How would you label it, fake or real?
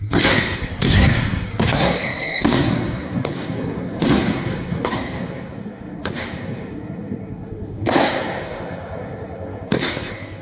fake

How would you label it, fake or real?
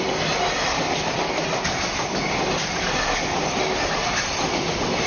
real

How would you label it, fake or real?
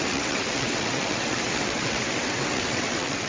fake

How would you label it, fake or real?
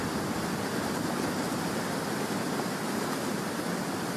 fake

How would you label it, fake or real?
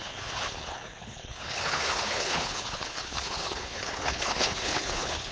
fake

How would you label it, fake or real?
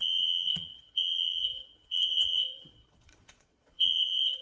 fake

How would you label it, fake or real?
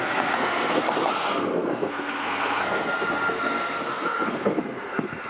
fake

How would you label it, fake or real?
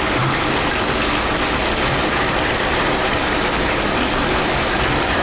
real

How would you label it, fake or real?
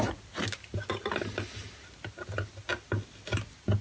real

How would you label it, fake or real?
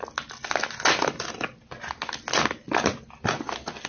real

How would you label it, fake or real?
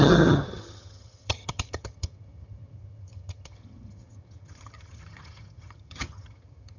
fake